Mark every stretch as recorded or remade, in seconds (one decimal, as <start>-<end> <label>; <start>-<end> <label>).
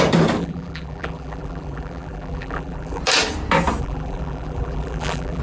0.0-0.4 recorded; 0.4-3.0 remade; 3.0-3.8 recorded; 3.8-5.4 remade